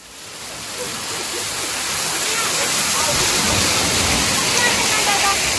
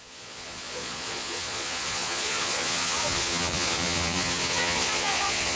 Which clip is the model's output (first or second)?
second